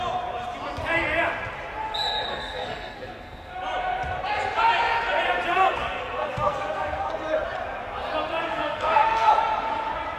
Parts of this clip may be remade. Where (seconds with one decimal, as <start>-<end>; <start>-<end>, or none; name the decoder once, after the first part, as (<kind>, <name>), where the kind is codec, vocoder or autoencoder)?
2.3-3.5 (codec, SNAC); 5.5-7.1; 8.5-9.3